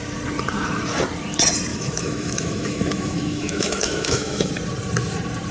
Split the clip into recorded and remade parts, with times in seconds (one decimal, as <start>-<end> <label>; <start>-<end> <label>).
0.0-1.7 recorded; 1.7-4.5 remade; 4.5-5.5 recorded

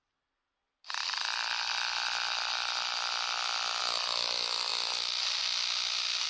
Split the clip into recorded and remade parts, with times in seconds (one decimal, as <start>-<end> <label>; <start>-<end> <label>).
0.0-6.3 recorded

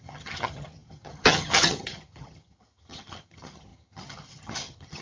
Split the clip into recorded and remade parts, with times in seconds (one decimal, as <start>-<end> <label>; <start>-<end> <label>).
0.0-5.0 remade